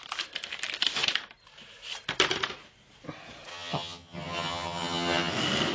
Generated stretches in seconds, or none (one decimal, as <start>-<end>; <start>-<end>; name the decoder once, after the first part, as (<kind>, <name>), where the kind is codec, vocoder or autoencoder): 3.5-5.3 (vocoder, HiFi-GAN)